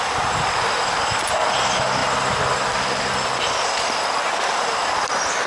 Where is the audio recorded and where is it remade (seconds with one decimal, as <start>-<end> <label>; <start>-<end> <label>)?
0.0-5.5 recorded

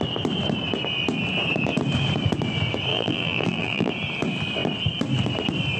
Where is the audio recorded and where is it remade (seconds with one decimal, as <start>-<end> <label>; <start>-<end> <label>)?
0.0-2.9 recorded; 2.9-3.9 remade; 3.9-5.8 recorded

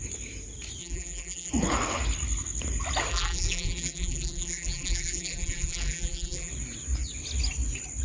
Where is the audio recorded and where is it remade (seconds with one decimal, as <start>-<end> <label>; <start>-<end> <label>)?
0.0-0.8 recorded; 0.8-1.5 remade; 1.5-3.1 recorded; 3.1-6.5 remade; 6.5-8.0 recorded

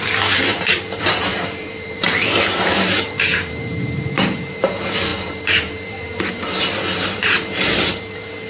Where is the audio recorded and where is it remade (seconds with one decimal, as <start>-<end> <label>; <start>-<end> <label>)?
0.0-8.5 remade